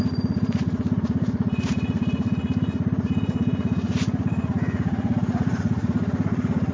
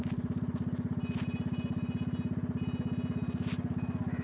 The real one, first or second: second